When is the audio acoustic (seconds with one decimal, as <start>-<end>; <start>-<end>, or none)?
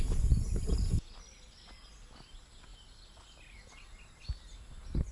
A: 0.0-5.1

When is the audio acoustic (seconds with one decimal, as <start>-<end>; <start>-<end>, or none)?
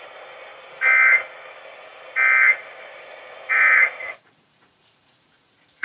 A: 0.5-3.1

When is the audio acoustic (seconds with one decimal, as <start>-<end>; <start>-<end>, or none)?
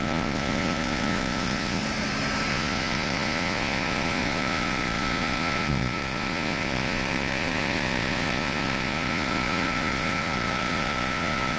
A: 1.8-2.5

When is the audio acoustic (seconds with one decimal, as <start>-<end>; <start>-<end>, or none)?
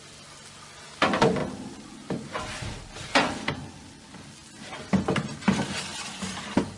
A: 0.0-6.8